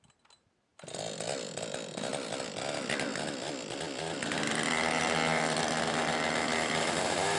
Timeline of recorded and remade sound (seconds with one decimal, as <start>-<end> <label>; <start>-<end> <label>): 0.0-7.4 recorded